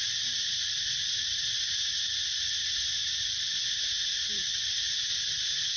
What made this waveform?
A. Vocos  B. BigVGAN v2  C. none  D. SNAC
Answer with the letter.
B